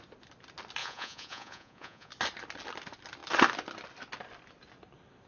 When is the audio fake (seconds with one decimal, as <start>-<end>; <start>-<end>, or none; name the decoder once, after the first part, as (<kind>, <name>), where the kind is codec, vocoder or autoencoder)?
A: 0.8-2.1 (vocoder, Vocos)